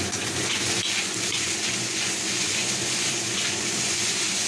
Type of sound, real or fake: fake